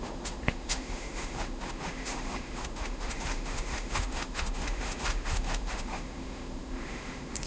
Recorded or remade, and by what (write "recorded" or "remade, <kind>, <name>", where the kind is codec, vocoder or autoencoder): remade, autoencoder, DAC-VAE